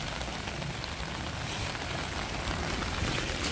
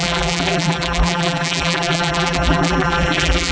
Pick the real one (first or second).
first